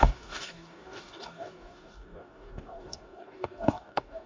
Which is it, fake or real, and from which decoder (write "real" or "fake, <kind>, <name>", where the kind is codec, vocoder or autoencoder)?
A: fake, codec, DAC